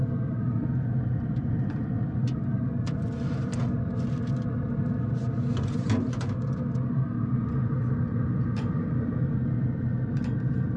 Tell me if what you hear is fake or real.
real